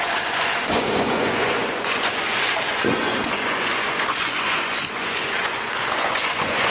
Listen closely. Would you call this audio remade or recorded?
remade